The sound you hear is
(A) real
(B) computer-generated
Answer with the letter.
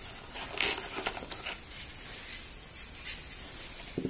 A